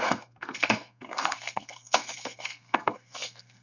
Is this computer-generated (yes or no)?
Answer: yes